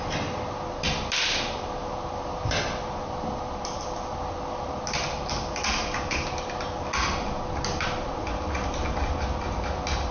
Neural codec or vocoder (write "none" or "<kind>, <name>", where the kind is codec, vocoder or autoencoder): none